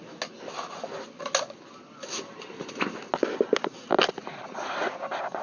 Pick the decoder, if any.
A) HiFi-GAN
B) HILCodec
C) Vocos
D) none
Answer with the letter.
D